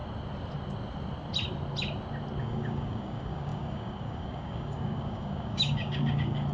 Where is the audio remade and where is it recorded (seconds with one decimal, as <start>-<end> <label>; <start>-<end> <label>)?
0.0-2.4 recorded; 2.4-6.5 remade